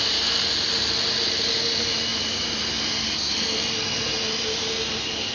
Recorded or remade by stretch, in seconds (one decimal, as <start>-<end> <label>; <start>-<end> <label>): 0.0-5.3 recorded